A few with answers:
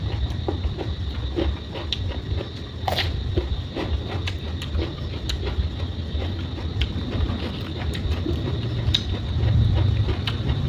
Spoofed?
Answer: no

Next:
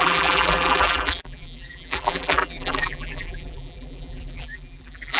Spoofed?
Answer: yes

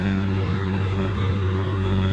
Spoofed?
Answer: yes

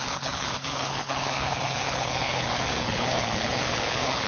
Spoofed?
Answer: yes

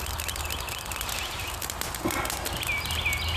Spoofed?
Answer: no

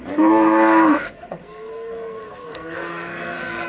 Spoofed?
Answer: yes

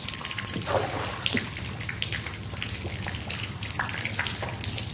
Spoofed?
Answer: no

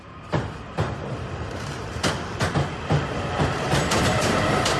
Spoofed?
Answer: yes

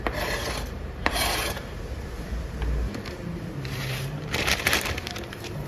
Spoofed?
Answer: yes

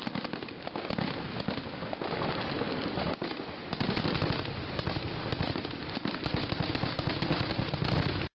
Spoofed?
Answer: no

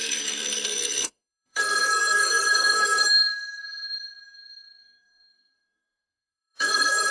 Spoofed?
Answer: yes